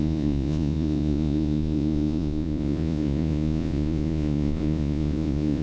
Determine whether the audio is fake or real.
fake